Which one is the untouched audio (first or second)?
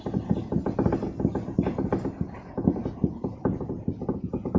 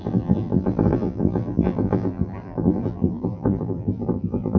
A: first